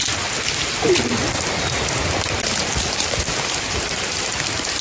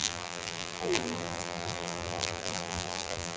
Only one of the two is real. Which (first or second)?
first